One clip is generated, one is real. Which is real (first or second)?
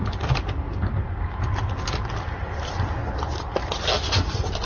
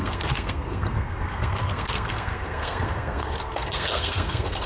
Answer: first